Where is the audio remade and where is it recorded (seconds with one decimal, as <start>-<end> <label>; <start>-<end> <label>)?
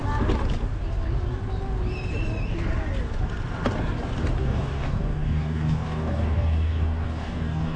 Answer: 0.0-4.4 recorded; 4.4-7.8 remade